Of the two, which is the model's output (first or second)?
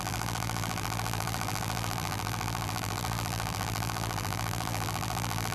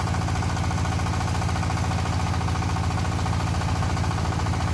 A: first